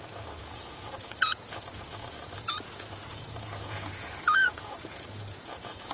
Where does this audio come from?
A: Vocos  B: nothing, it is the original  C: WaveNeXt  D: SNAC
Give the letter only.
A